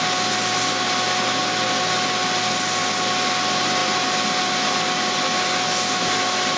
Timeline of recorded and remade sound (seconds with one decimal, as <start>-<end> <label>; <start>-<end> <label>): 0.0-6.6 recorded